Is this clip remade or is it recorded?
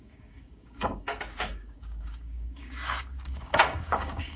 remade